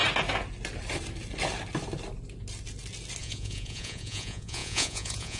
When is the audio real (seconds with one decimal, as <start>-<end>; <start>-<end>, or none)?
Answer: 0.0-3.2